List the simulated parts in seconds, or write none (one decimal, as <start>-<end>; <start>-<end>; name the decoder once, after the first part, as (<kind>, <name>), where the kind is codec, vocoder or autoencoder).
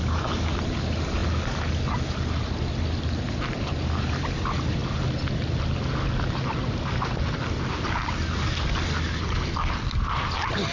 none